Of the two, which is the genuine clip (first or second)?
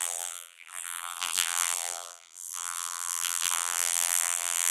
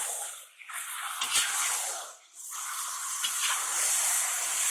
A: second